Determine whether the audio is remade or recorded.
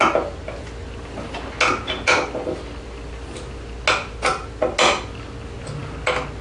recorded